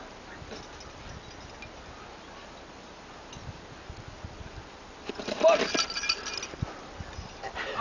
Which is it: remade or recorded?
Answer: recorded